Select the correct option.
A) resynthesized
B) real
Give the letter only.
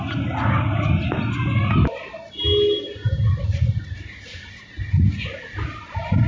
B